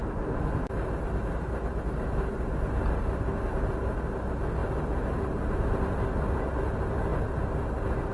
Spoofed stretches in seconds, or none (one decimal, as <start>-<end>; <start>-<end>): none